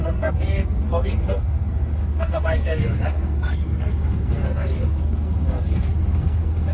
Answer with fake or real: fake